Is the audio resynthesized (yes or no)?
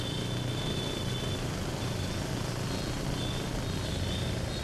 no